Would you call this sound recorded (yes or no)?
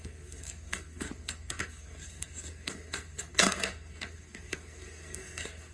no